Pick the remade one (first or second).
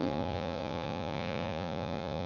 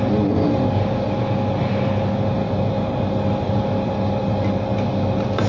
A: first